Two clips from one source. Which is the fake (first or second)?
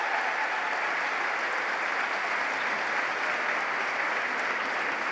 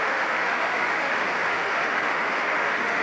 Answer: second